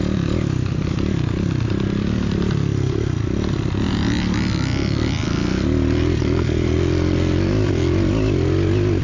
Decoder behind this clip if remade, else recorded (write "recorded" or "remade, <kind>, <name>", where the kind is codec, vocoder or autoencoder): recorded